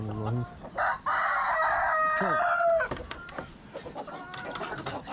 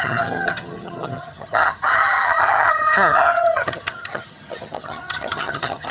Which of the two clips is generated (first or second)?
second